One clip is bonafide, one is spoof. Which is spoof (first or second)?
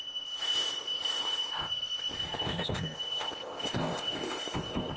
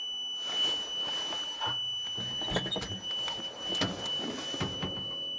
first